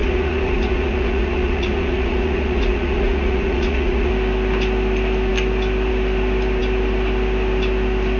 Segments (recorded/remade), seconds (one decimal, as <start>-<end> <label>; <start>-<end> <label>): 0.0-4.1 remade; 4.1-8.2 recorded